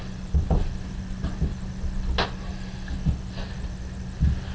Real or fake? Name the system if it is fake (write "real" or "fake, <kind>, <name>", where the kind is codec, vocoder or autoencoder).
real